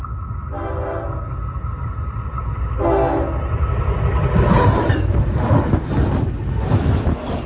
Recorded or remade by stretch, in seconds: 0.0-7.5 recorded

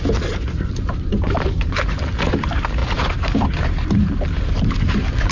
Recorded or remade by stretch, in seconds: 0.0-5.3 recorded

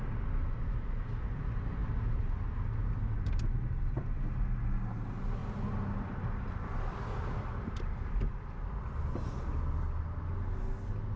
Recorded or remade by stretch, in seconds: 0.0-11.2 recorded

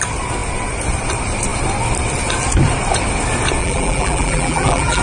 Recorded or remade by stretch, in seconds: 0.0-3.6 recorded; 3.6-5.0 remade

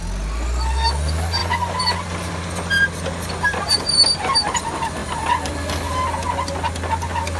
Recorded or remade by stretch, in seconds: 0.0-5.0 recorded; 5.0-5.6 remade; 5.6-7.4 recorded